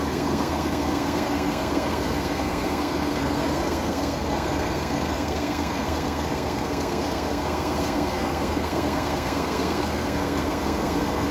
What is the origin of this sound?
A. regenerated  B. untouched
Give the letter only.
A